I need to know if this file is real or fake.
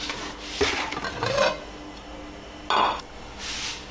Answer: real